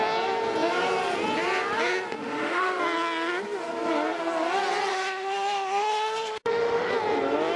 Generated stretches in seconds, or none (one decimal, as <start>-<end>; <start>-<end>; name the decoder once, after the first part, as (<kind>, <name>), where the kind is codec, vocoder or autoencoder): 2.2-2.8 (autoencoder, DAC-VAE); 4.9-6.9